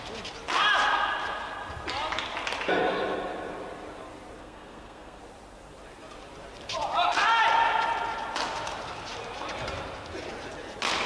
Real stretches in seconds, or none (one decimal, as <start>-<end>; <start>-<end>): 0.0-4.4; 5.2-11.1